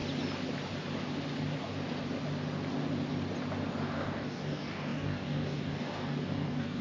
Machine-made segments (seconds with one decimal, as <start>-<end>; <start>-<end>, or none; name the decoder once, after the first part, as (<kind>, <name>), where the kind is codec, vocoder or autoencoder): 3.8-6.8 (codec, DAC)